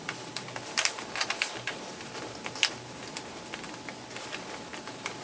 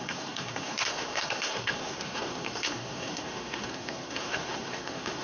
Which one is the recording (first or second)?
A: first